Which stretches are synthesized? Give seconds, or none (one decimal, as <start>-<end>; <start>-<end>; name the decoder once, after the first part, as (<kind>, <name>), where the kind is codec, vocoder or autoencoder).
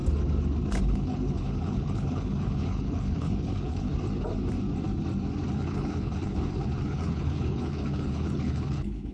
0.8-3.9 (codec, HILCodec); 5.5-9.1